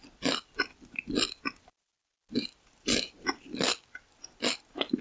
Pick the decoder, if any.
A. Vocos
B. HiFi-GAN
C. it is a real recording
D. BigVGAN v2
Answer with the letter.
C